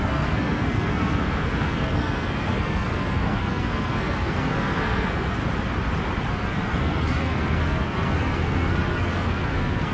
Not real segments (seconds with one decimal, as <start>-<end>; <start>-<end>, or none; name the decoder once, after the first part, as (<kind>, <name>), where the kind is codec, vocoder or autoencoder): 0.0-5.4 (codec, SNAC); 6.3-9.9